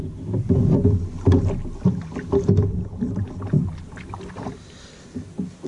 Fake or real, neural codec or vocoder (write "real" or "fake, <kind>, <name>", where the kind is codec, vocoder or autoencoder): real